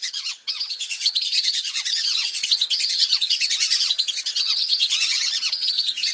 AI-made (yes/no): yes